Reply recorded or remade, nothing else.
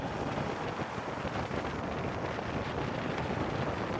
recorded